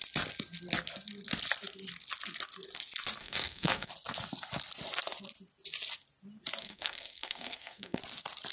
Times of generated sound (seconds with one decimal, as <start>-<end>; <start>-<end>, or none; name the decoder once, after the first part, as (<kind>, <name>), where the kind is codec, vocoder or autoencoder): 3.2-3.9 (codec, SNAC); 6.6-8.0